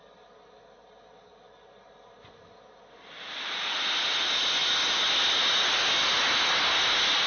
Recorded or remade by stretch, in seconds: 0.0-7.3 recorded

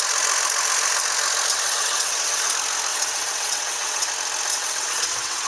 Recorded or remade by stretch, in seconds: 0.0-1.5 recorded; 1.5-2.5 remade; 2.5-2.9 recorded; 2.9-4.1 remade; 4.1-4.5 recorded; 4.5-5.5 remade

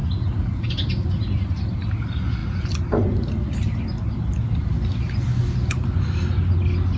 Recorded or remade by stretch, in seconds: 0.0-7.0 recorded

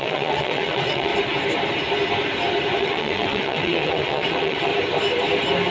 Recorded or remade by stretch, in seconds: 0.0-1.1 remade; 1.1-2.8 recorded; 2.8-4.7 remade; 4.7-5.7 recorded

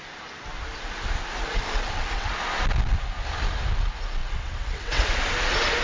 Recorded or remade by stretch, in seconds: 0.0-1.4 recorded; 1.4-2.3 remade; 2.3-4.2 recorded; 4.2-5.0 remade; 5.0-5.8 recorded

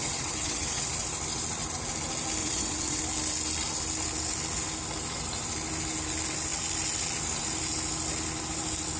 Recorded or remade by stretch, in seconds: 0.0-0.9 remade; 0.9-2.4 recorded; 2.4-3.0 remade; 3.0-9.0 recorded